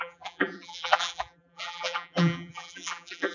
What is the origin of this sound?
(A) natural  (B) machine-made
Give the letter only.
B